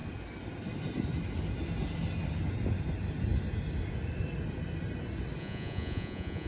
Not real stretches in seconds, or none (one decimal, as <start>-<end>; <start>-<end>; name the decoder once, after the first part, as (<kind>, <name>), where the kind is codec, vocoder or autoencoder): 5.4-6.5 (vocoder, Vocos)

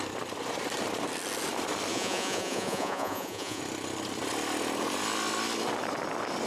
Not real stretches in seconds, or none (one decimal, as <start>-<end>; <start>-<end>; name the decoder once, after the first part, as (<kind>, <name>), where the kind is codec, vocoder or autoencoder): 1.9-3.6 (vocoder, Vocos)

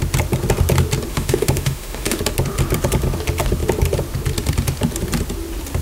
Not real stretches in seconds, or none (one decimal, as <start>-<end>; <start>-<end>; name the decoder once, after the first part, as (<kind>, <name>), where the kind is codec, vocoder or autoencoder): 1.1-2.2 (autoencoder, DAC-VAE)

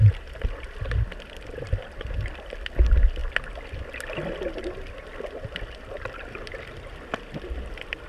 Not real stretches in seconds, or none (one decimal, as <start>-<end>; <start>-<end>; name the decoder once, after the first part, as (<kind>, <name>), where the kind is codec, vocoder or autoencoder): none

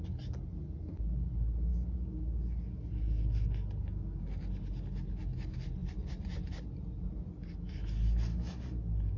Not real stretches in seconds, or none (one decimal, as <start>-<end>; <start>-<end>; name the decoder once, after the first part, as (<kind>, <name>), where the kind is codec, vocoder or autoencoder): none

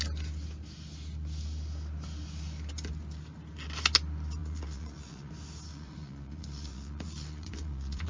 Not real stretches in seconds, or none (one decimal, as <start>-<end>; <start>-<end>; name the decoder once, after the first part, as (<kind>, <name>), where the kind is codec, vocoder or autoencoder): 4.4-5.3 (vocoder, Vocos); 5.7-8.1

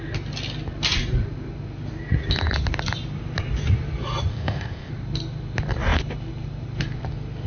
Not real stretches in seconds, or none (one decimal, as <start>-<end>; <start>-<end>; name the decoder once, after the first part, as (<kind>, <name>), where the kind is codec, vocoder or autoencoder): 4.3-4.9 (codec, ZipCodec)

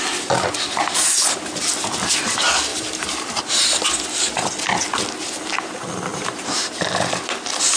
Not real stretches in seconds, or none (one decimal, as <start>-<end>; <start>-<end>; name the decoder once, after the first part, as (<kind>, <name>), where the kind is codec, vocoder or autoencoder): 2.7-3.4 (vocoder, BigVGAN v2); 6.1-6.8